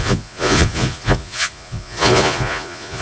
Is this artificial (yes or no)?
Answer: yes